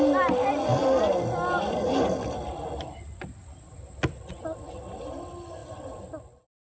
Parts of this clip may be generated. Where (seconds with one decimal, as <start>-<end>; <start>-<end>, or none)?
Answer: none